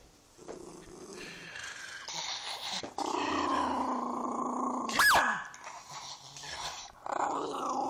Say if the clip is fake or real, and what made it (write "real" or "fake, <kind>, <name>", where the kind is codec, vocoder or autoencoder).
real